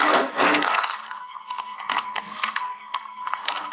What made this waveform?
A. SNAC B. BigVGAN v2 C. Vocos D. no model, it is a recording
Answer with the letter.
A